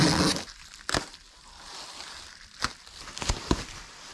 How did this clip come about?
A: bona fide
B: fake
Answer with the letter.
A